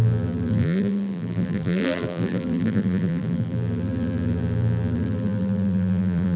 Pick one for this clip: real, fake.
fake